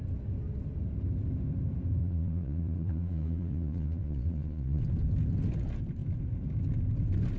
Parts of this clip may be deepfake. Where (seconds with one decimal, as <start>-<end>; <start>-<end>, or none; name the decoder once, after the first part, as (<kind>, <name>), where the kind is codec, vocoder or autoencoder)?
2.0-4.8 (vocoder, Vocos)

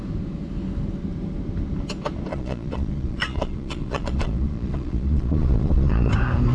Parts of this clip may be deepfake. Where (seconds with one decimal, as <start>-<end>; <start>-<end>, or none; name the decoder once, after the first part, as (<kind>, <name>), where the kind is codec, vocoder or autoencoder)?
2.3-6.1 (vocoder, Vocos)

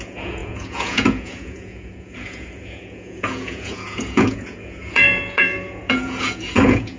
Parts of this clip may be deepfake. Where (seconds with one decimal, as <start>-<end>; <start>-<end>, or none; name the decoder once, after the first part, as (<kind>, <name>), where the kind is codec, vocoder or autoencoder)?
0.0-7.0 (vocoder, Vocos)

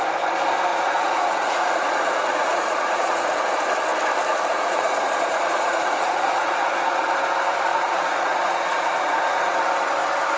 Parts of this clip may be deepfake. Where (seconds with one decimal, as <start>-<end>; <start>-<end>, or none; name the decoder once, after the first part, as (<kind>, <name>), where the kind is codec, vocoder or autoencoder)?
0.7-3.4 (vocoder, Vocos); 4.5-7.0; 7.7-9.6

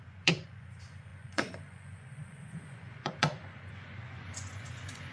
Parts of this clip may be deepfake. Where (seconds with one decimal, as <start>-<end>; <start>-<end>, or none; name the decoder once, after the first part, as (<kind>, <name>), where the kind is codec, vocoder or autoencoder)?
0.0-5.1 (vocoder, Vocos)